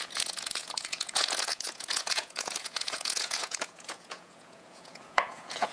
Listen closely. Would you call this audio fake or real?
fake